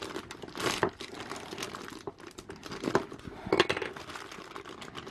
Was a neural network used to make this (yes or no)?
no